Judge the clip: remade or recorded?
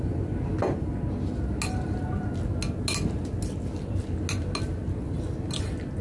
recorded